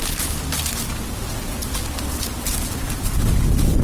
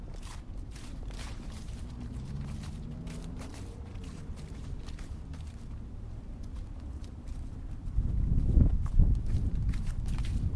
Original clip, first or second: first